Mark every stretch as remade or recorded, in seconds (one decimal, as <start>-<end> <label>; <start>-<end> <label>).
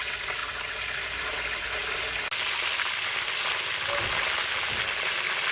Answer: 0.0-5.5 recorded